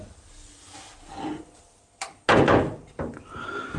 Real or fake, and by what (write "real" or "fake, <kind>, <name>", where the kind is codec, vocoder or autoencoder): real